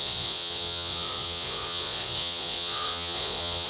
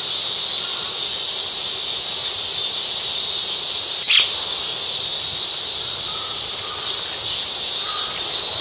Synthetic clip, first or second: first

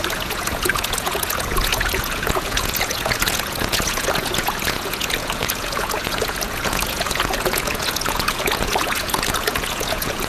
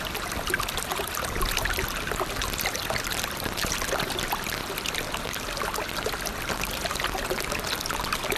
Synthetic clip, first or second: first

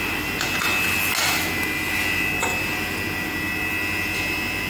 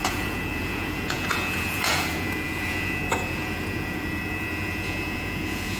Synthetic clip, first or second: second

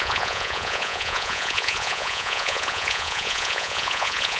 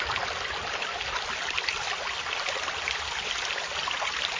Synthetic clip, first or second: first